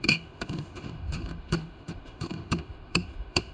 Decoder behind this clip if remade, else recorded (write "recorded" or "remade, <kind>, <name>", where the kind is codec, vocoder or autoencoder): remade, autoencoder, DAC-VAE